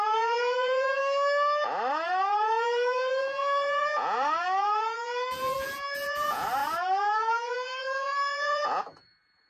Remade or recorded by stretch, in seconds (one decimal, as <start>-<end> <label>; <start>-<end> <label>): 0.0-1.0 remade; 1.0-1.9 recorded; 1.9-9.5 remade